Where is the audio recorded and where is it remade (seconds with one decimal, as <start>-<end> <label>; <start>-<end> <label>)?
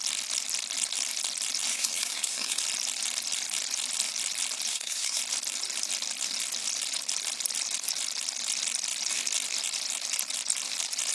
0.0-1.7 recorded; 1.7-2.6 remade; 2.6-4.7 recorded; 4.7-5.2 remade; 5.2-11.1 recorded